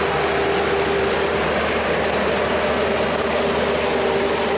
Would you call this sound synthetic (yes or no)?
no